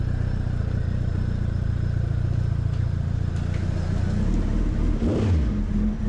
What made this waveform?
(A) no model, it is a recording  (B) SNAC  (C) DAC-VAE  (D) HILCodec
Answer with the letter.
A